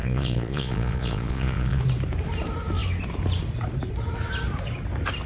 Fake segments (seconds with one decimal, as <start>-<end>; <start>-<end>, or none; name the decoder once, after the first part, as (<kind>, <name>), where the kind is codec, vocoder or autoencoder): 0.0-1.8 (vocoder, Vocos)